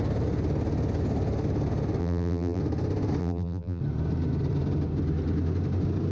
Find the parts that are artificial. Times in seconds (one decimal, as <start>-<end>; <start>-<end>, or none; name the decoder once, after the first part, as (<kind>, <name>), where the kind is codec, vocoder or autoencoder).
2.0-2.6 (vocoder, BigVGAN v2); 3.2-3.8